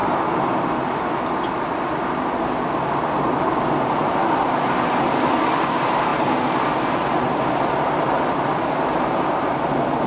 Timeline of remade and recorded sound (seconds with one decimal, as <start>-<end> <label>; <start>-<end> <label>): 0.0-10.1 recorded